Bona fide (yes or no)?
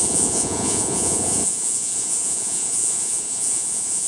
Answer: no